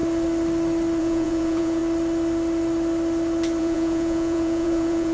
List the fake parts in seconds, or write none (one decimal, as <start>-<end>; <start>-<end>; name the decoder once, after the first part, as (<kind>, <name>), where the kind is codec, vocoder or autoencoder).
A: 1.0-1.8 (vocoder, Vocos); 3.6-5.1